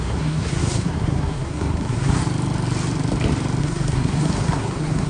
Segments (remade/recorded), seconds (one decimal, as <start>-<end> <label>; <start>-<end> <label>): 0.0-2.2 remade; 2.2-3.6 recorded; 3.6-5.1 remade